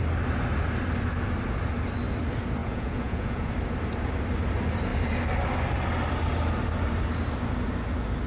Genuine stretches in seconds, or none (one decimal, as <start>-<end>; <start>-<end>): 0.0-2.6; 3.5-8.3